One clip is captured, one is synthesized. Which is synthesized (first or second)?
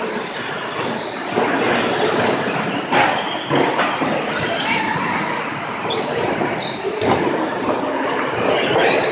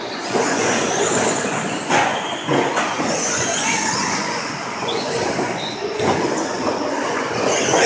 second